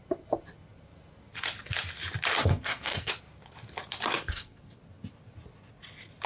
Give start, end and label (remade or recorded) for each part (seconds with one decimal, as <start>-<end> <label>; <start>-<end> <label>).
0.0-2.4 recorded; 2.4-3.1 remade; 3.1-4.2 recorded; 4.2-4.8 remade; 4.8-6.3 recorded